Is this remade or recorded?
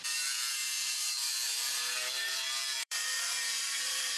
remade